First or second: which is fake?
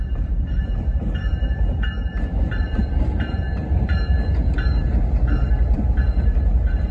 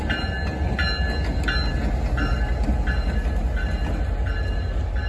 first